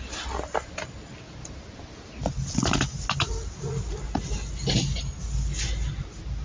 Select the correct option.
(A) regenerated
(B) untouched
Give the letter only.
B